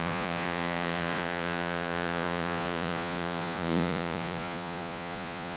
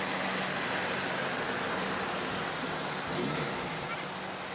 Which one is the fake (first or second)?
first